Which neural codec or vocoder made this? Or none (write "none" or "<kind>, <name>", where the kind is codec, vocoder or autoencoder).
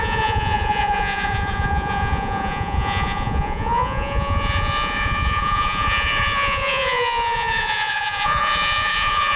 vocoder, Vocos